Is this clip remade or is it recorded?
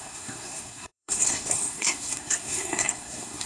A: remade